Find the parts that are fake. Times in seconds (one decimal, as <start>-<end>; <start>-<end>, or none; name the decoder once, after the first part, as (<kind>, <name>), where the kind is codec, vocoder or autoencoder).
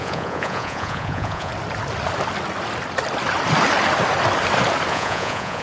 0.0-1.5 (vocoder, Vocos); 4.9-5.6